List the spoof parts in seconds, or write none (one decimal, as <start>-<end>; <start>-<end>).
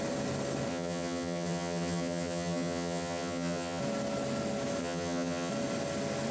0.7-3.8; 4.8-5.5